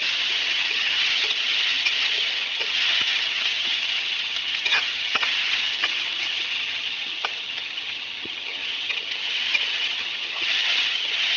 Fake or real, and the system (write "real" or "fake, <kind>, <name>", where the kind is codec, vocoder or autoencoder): fake, vocoder, HiFi-GAN